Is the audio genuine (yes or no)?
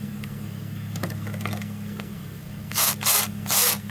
no